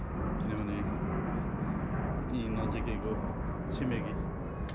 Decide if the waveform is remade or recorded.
recorded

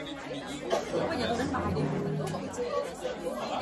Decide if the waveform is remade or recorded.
recorded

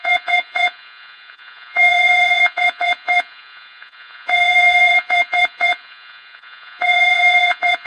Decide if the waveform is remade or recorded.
remade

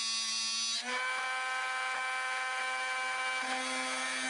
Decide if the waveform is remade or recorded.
recorded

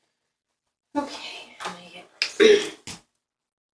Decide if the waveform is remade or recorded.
recorded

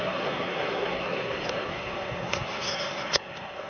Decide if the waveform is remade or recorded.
remade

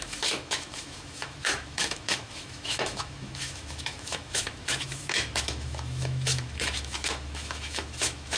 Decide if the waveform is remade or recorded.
remade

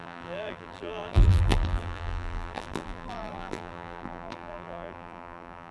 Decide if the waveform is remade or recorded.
remade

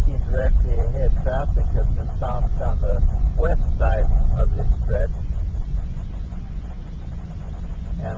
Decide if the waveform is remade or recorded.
remade